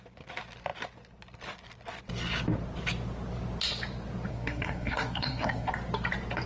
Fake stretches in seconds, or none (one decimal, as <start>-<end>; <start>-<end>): 4.3-5.7